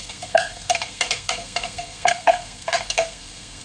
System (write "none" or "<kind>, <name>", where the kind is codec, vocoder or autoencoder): codec, SNAC